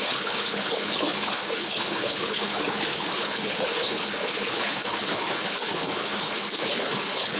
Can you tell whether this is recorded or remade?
remade